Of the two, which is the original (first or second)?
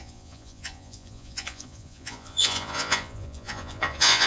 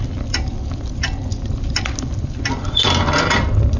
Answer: second